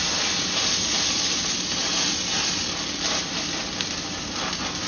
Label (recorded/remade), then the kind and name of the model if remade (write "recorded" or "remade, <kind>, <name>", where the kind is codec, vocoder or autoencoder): recorded